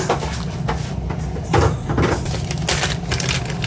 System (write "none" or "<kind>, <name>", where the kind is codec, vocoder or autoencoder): none